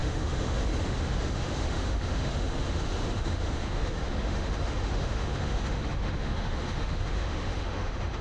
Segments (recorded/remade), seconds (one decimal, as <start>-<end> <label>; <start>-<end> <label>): 0.0-8.2 remade